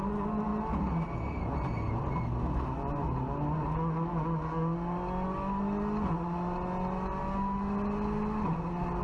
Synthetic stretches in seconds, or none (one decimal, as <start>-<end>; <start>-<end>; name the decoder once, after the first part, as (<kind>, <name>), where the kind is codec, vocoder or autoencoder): none